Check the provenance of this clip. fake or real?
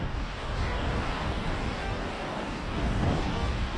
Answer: fake